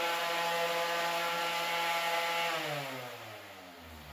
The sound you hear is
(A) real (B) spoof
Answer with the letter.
A